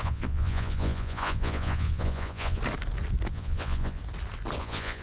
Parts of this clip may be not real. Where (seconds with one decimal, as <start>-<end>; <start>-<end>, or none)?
0.0-2.6; 3.3-4.0; 4.6-5.0